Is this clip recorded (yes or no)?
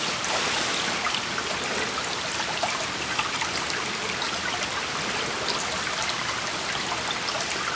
yes